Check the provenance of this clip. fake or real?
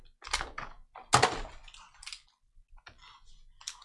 real